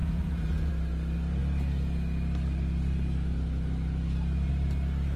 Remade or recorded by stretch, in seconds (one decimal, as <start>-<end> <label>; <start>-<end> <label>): 0.0-0.7 remade; 0.7-5.2 recorded